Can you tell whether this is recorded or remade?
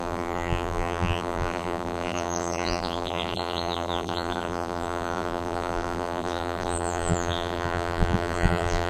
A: remade